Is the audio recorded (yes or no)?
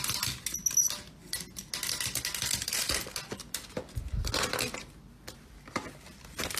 yes